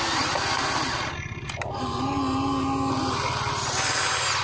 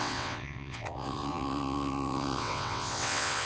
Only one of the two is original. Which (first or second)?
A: first